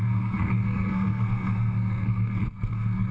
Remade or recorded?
remade